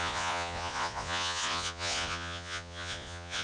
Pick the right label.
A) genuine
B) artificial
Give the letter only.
B